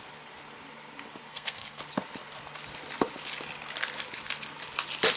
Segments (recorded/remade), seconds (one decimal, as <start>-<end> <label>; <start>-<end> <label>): 0.0-1.3 recorded; 1.3-1.8 remade; 1.8-5.2 recorded